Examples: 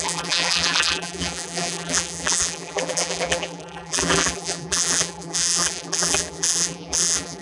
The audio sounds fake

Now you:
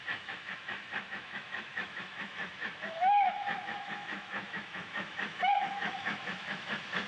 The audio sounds fake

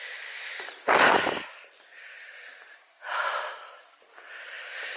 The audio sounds real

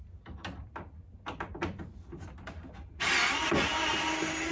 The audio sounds real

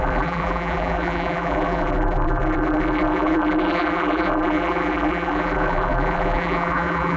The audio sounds fake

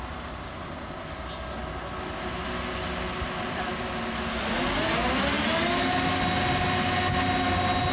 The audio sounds real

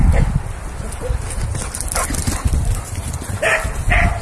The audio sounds real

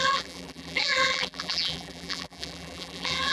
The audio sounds fake